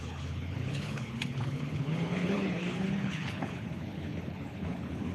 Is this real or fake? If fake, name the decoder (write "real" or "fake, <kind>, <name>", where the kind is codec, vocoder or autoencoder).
fake, codec, HILCodec